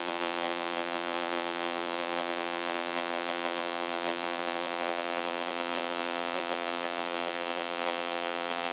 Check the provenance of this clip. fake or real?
fake